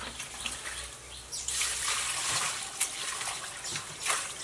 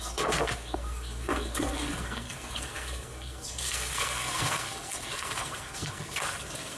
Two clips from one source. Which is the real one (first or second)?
first